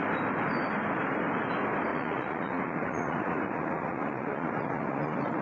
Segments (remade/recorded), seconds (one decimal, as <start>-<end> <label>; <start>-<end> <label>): 0.0-1.9 recorded; 1.9-5.4 remade